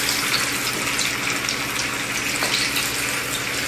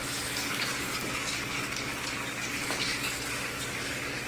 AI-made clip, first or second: second